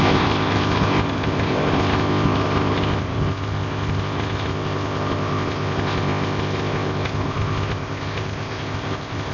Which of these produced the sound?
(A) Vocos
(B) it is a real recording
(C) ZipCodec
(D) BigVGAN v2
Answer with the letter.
C